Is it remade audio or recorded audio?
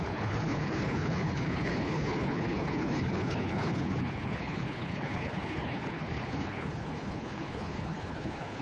remade